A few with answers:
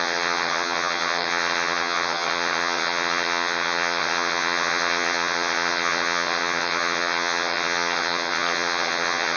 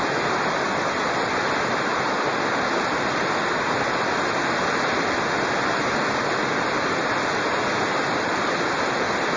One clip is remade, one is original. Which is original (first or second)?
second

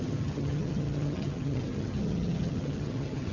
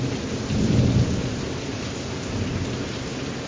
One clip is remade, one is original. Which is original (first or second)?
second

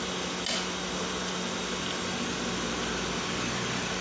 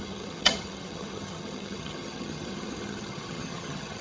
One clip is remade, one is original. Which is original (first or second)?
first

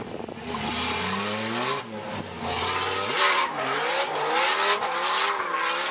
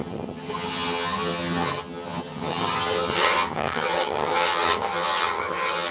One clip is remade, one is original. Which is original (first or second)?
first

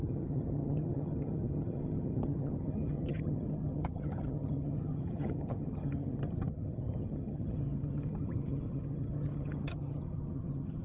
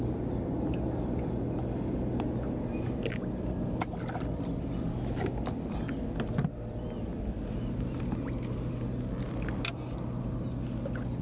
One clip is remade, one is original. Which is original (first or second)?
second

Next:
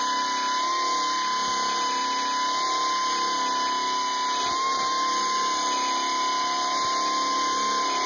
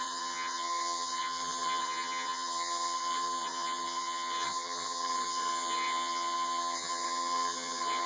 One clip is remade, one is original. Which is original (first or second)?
first